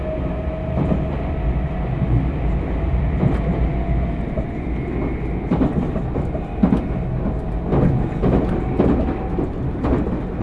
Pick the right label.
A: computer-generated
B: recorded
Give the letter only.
B